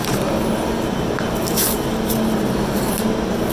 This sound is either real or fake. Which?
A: real